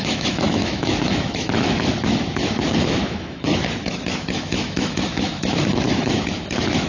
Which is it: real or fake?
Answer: fake